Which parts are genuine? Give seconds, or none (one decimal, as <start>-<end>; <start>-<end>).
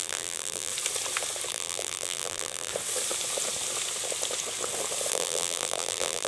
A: 0.7-1.5; 2.7-5.1